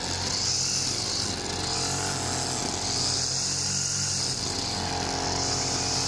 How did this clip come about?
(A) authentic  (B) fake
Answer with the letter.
A